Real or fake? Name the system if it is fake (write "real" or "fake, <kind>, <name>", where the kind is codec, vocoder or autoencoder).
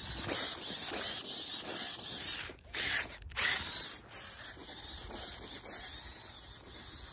real